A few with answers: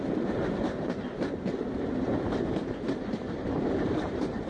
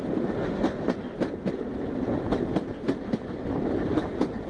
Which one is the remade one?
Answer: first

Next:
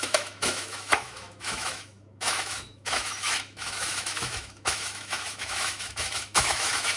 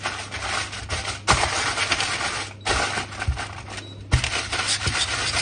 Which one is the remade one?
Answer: first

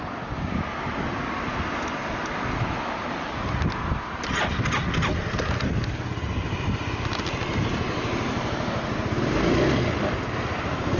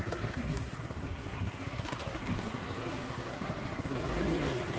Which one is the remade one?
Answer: second